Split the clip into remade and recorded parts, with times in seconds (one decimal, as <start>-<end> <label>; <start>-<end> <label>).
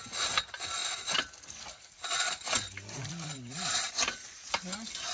0.0-0.8 recorded; 0.8-3.9 remade; 3.9-5.1 recorded